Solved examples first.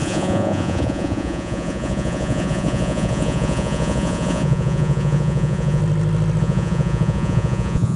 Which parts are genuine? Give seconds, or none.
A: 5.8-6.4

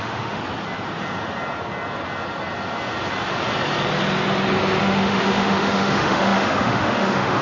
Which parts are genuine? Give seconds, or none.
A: 0.4-4.8